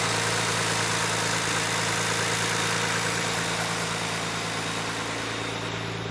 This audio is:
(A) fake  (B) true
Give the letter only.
B